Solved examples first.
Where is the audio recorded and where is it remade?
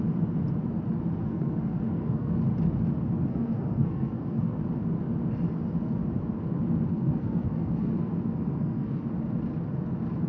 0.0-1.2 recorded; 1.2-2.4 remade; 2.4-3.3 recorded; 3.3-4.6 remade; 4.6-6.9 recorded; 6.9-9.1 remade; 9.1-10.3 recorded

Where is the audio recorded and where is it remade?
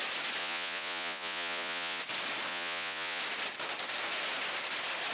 0.0-0.4 recorded; 0.4-2.0 remade; 2.0-2.5 recorded; 2.5-3.2 remade; 3.2-5.1 recorded